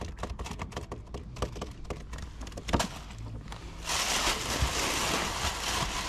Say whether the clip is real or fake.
real